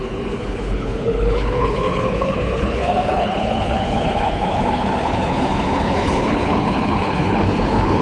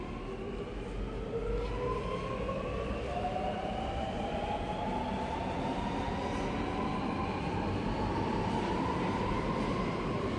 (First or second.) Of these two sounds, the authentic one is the second